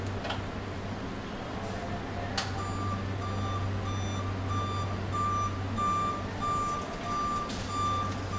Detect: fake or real real